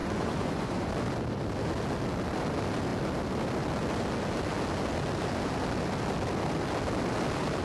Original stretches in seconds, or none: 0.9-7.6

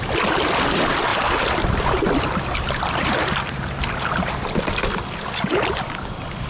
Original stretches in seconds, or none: 0.0-6.5

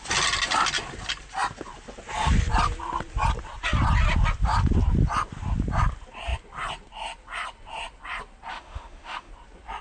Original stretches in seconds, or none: 0.0-8.5; 9.3-9.8

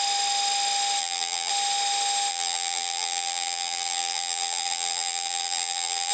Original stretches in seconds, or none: 0.0-1.0; 1.5-2.3

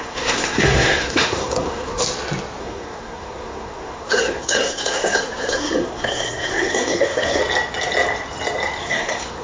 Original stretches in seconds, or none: 2.0-2.6; 7.4-8.8

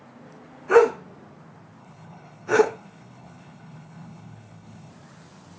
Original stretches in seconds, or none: 0.0-1.8; 4.9-5.6